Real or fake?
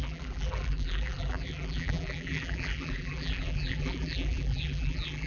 fake